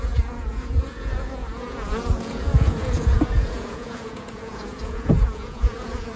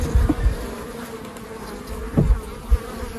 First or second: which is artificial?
first